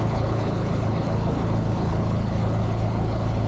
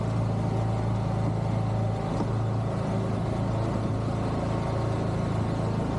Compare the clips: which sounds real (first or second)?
second